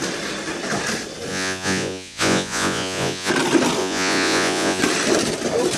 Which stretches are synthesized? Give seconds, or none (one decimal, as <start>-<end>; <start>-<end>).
1.3-3.3; 3.8-4.8

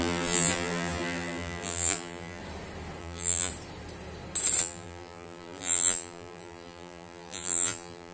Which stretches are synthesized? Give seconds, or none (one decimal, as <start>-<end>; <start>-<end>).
0.0-2.4; 3.0-3.5; 4.6-8.1